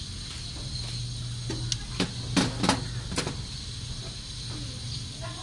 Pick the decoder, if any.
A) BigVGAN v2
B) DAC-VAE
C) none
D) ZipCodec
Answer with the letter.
C